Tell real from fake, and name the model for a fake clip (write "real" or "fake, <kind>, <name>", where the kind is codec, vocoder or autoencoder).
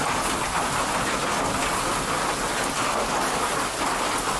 real